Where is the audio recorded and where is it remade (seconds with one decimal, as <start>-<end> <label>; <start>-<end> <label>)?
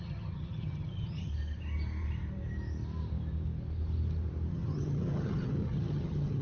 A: 0.0-1.3 remade; 1.3-4.5 recorded; 4.5-6.4 remade